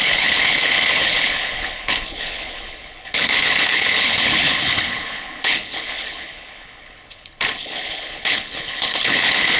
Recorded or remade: remade